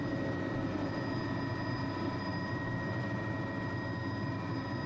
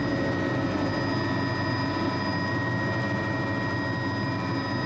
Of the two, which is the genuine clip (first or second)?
second